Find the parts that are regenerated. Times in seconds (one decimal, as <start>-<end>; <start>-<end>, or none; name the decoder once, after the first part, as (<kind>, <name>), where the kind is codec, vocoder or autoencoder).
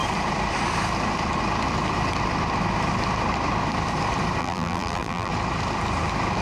4.4-5.3 (vocoder, BigVGAN v2)